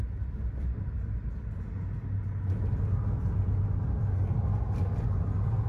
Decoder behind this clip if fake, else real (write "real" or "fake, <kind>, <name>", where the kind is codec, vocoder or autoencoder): real